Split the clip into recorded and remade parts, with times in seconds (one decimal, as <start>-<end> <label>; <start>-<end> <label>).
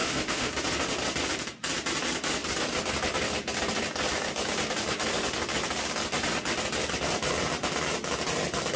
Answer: 0.0-0.5 remade; 0.5-8.8 recorded